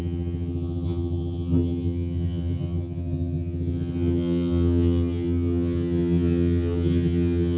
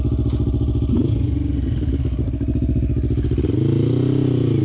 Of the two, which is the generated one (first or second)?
first